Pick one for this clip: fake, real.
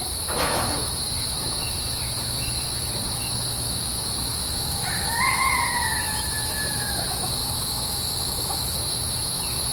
fake